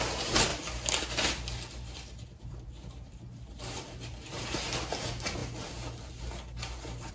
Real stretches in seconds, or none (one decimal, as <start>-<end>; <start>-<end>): 0.0-7.1